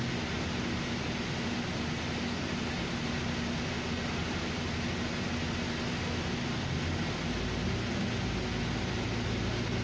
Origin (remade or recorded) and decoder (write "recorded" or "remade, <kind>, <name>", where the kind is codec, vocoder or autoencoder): recorded